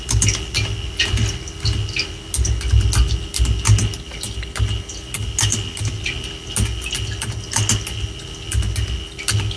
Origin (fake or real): real